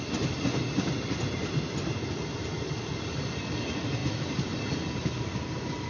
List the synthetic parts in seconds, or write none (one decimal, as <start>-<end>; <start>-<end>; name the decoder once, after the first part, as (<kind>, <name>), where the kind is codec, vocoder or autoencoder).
none